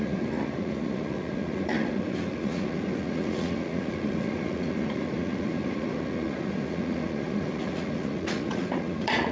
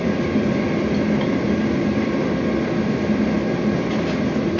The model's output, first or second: first